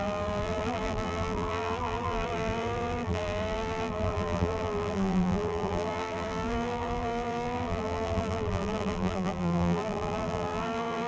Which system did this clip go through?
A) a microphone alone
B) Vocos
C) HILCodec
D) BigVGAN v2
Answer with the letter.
D